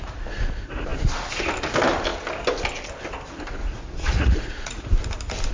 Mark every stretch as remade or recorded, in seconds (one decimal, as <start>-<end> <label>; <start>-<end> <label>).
0.0-3.6 recorded; 3.6-4.8 remade; 4.8-5.5 recorded